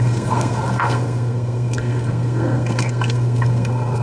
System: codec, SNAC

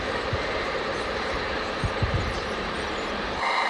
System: vocoder, BigVGAN v2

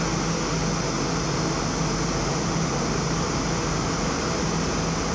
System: none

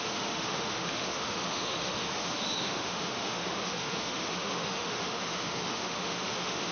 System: autoencoder, DAC-VAE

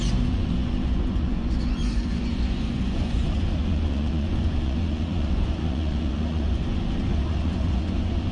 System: vocoder, Vocos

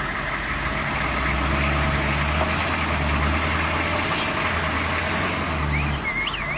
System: none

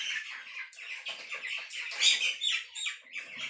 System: none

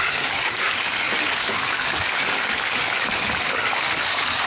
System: codec, DAC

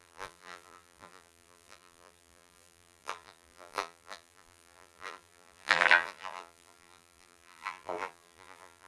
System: vocoder, BigVGAN v2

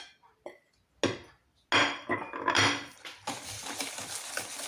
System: none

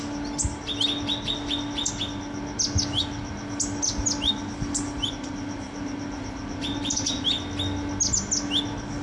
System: none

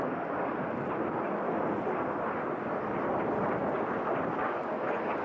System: none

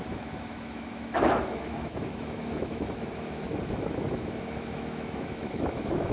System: autoencoder, DAC-VAE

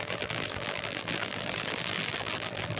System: vocoder, BigVGAN v2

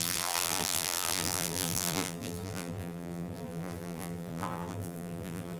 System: vocoder, BigVGAN v2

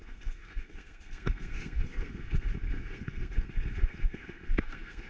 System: codec, SNAC